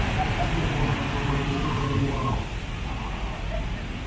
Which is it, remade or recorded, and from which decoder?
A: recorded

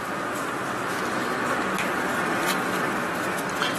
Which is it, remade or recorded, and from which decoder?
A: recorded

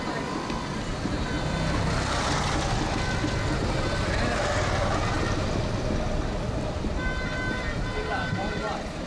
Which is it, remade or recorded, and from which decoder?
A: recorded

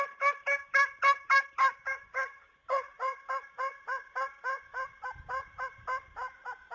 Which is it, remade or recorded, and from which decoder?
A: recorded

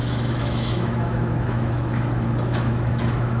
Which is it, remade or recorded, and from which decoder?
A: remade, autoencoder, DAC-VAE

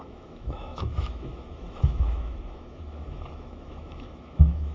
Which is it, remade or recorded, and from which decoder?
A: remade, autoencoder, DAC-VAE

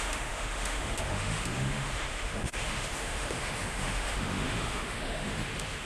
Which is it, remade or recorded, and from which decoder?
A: remade, autoencoder, DAC-VAE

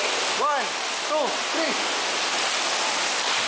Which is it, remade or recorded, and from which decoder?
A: recorded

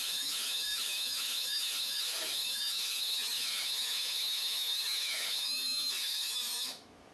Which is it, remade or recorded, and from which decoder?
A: remade, autoencoder, DAC-VAE